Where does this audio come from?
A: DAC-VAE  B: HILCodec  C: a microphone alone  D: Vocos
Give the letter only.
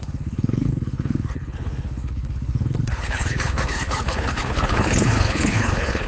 B